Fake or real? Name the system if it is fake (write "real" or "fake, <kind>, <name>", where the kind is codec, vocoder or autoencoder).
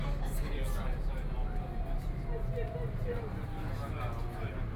real